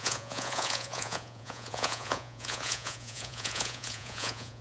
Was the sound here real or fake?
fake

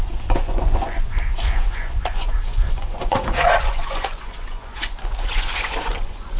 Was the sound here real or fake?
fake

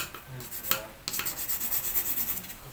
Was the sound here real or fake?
real